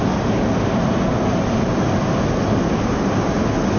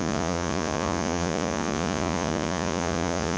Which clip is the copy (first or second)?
second